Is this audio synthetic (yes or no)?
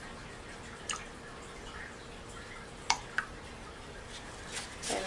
no